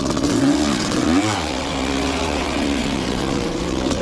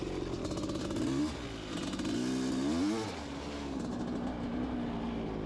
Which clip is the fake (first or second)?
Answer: first